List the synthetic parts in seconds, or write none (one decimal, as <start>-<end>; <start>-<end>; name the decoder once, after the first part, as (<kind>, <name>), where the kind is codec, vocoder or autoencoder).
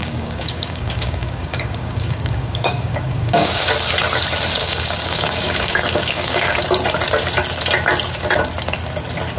0.0-3.7 (codec, DAC); 4.6-6.6